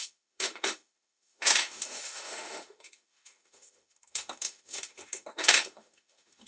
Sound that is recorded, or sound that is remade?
remade